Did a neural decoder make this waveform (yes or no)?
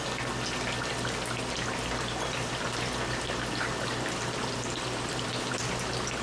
no